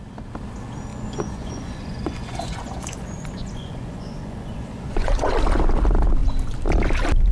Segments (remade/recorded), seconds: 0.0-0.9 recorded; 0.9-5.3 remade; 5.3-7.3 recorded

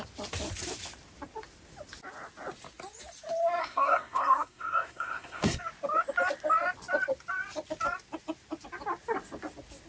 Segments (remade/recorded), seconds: 0.0-3.6 recorded; 3.6-5.6 remade; 5.6-9.9 recorded